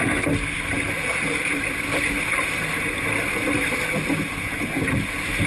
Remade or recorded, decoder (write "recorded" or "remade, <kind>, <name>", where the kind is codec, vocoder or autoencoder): recorded